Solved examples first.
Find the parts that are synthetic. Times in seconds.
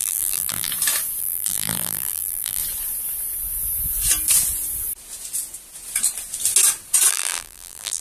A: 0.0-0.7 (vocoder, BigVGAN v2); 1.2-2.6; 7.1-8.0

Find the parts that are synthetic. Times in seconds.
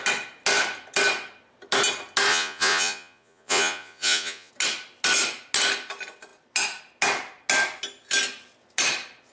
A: 2.3-4.5 (vocoder, Vocos)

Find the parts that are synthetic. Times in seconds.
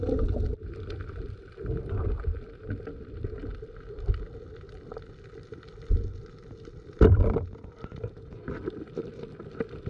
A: 0.0-3.4 (vocoder, BigVGAN v2); 7.0-9.9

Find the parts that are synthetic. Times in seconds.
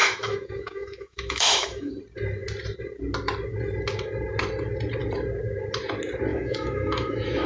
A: 0.0-1.9 (autoencoder, DAC-VAE); 6.3-7.5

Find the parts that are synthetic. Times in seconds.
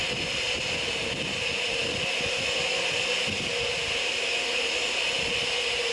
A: none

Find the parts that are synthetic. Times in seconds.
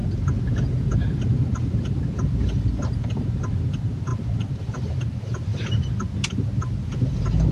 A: none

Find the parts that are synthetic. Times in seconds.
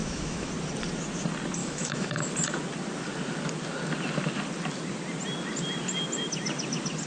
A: 0.0-0.5 (autoencoder, DAC-VAE); 1.6-2.3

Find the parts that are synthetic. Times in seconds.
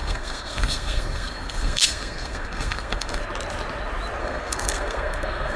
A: 0.0-3.2 (codec, SNAC); 4.2-5.6